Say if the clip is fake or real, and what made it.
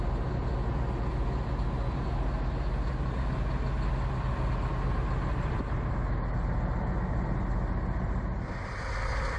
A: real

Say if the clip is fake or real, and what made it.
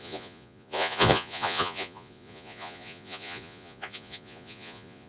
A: fake, vocoder, Vocos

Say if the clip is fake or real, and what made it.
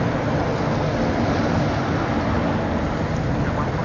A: real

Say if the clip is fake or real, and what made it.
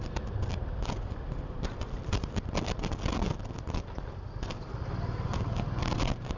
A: real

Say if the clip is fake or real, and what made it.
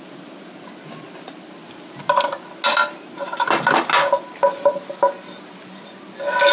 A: real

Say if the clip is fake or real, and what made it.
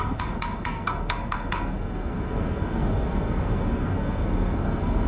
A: fake, codec, SNAC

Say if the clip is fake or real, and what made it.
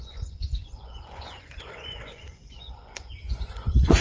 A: fake, vocoder, Vocos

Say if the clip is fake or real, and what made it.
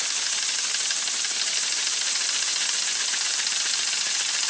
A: real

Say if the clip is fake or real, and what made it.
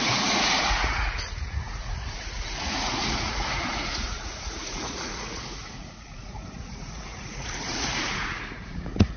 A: fake, vocoder, Vocos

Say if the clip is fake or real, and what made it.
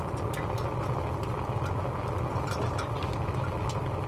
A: real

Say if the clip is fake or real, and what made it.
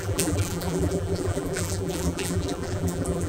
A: fake, vocoder, BigVGAN v2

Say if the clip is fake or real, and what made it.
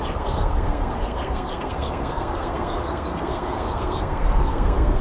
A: fake, codec, SNAC